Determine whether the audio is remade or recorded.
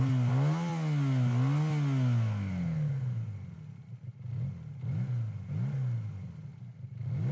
recorded